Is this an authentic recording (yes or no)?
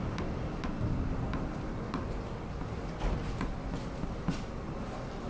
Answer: yes